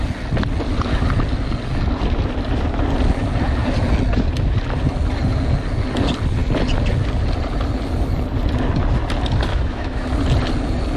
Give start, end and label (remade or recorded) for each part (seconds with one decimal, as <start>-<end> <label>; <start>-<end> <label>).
0.0-9.5 recorded; 9.5-10.1 remade; 10.1-11.0 recorded